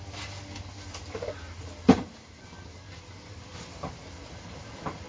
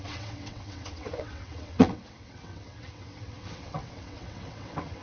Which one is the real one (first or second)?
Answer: first